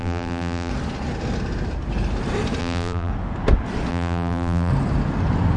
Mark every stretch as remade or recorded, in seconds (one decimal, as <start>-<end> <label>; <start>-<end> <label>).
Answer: 0.0-0.7 remade; 0.7-2.6 recorded; 2.6-3.1 remade; 3.1-3.9 recorded; 3.9-4.7 remade; 4.7-5.6 recorded